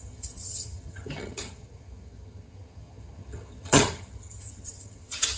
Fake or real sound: fake